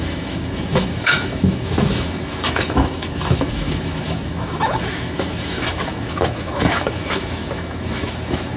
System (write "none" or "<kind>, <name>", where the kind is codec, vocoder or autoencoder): autoencoder, DAC-VAE